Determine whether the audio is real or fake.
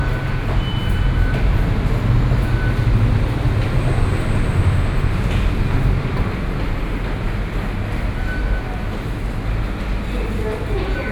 real